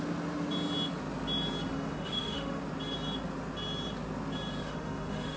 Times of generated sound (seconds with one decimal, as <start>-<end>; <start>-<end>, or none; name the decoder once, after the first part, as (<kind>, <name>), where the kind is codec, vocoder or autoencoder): 1.7-2.6 (autoencoder, DAC-VAE); 4.6-5.4